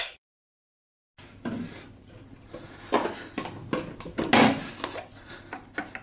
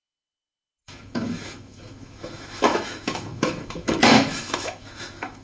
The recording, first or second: first